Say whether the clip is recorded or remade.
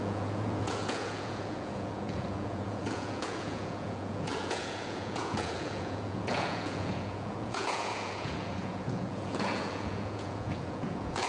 remade